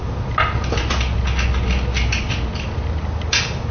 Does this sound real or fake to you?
real